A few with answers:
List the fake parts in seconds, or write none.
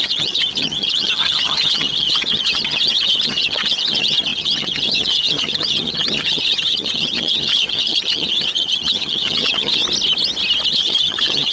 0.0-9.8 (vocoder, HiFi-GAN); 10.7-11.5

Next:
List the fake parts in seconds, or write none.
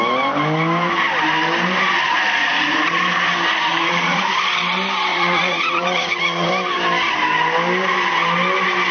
2.4-3.0 (vocoder, Vocos); 3.7-4.3; 5.1-6.5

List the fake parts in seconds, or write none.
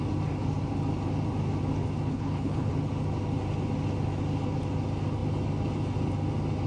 2.1-2.7 (codec, HILCodec)